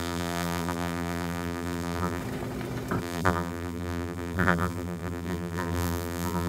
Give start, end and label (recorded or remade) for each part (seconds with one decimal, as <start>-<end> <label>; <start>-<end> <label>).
0.0-2.2 remade; 2.2-3.0 recorded; 3.0-6.5 remade